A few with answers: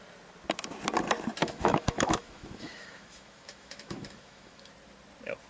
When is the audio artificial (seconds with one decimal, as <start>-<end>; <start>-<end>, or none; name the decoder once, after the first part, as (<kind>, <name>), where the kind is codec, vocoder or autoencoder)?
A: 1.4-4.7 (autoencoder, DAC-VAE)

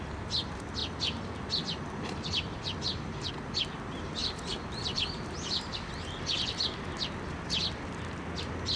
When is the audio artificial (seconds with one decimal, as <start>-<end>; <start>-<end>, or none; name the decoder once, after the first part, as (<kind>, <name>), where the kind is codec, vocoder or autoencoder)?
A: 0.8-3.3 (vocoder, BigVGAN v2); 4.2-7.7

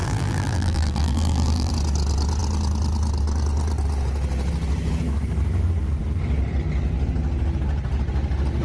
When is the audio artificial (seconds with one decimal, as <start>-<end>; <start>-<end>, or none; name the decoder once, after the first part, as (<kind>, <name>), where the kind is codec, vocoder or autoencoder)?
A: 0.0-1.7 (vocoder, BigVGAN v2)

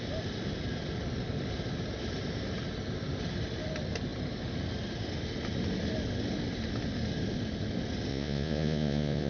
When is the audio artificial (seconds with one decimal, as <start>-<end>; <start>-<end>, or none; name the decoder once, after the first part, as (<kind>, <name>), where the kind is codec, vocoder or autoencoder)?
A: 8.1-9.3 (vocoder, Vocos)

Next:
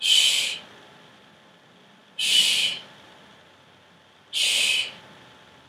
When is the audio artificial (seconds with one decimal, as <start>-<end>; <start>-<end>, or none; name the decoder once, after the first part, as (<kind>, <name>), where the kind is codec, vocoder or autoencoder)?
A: none

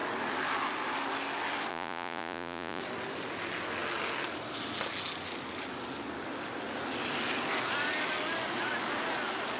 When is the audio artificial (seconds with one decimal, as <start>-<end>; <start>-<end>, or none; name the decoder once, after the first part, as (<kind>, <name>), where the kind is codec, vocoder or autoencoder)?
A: 1.7-2.8 (vocoder, Vocos)